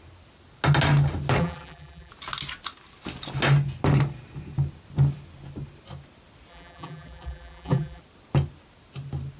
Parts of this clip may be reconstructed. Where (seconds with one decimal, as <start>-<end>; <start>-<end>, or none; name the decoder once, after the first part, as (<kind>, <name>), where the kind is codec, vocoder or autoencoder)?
1.4-2.1 (vocoder, BigVGAN v2); 6.5-8.0